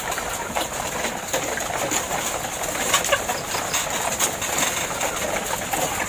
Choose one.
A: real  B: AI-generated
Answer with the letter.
A